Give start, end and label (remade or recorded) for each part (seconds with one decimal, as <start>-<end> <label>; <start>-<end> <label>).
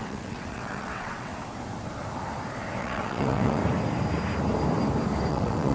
0.0-1.3 remade; 1.3-2.8 recorded; 2.8-3.6 remade; 3.6-5.3 recorded; 5.3-5.7 remade